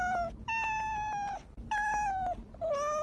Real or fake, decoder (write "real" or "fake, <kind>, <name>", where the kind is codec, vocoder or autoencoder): real